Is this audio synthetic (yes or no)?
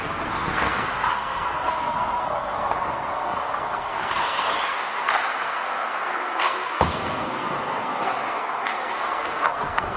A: yes